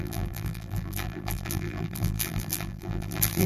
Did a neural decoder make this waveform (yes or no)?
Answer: yes